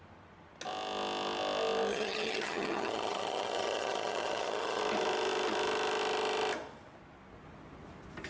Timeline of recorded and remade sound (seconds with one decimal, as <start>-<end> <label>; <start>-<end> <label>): 0.0-1.9 recorded; 1.9-4.8 remade; 4.8-8.3 recorded